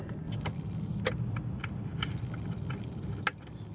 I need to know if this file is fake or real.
real